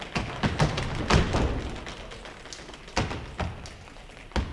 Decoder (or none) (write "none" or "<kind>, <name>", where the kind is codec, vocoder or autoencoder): none